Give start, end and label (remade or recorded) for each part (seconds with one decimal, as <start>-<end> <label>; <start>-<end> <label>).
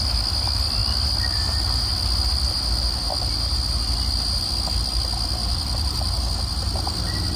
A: 0.0-5.4 recorded; 5.4-6.1 remade; 6.1-7.4 recorded